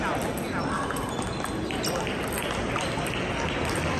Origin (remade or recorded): recorded